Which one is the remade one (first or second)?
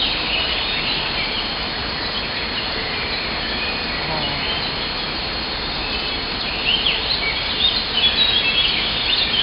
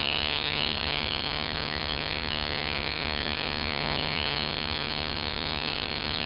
second